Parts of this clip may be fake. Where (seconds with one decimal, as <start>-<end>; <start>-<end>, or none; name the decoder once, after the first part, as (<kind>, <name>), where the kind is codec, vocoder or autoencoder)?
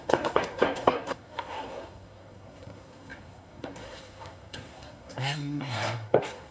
0.0-6.5 (codec, SNAC)